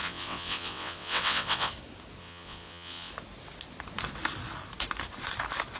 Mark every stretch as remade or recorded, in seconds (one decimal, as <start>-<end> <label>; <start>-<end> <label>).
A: 0.0-1.7 remade; 1.7-2.2 recorded; 2.2-3.1 remade; 3.1-5.8 recorded